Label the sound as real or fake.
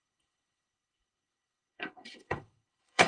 fake